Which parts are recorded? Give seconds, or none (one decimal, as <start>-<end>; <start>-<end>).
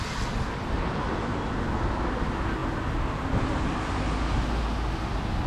0.0-5.5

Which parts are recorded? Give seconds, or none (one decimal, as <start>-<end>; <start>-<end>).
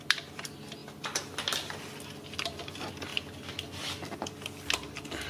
0.0-5.3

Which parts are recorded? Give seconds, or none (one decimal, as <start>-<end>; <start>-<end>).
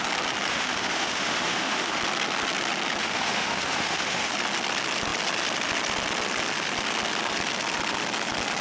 0.0-0.5; 2.0-3.0; 4.3-8.6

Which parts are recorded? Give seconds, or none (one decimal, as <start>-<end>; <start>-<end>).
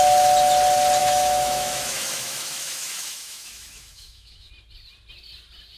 0.0-1.0; 4.5-5.8